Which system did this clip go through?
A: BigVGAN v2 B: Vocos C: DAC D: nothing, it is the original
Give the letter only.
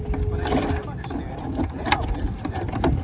D